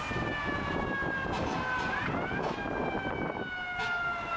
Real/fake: real